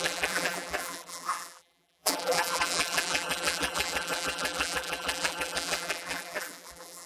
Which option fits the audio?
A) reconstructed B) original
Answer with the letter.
A